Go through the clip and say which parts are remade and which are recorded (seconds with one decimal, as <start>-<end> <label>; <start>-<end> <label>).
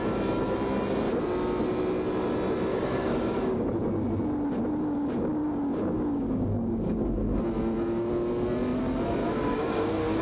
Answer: 0.0-2.7 recorded; 2.7-3.7 remade; 3.7-5.4 recorded; 5.4-7.4 remade; 7.4-9.2 recorded; 9.2-10.2 remade